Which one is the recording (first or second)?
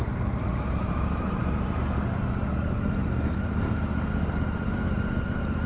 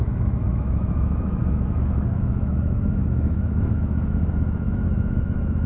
first